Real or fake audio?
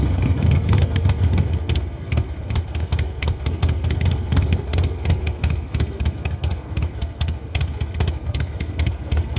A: fake